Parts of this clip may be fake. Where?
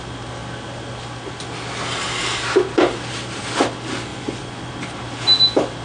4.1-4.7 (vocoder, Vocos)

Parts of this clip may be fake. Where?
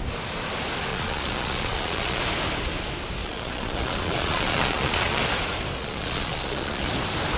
0.9-2.2 (vocoder, Vocos); 3.2-5.2; 5.8-6.9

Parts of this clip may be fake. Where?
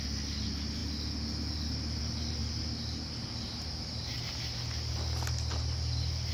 none